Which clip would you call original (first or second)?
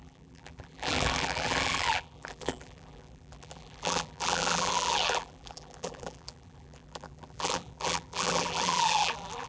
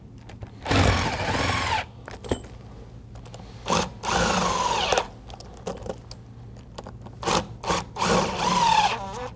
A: second